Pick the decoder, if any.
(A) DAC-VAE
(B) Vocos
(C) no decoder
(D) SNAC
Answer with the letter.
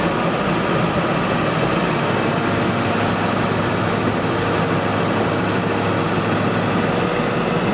C